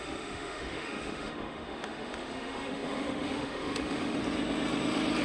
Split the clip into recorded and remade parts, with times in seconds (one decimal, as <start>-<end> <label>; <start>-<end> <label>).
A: 0.0-4.2 remade; 4.2-5.2 recorded